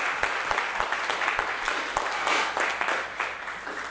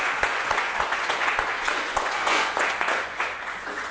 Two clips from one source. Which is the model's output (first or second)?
second